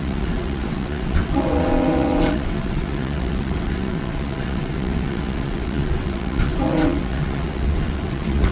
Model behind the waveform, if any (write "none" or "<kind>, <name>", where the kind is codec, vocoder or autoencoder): vocoder, WaveNeXt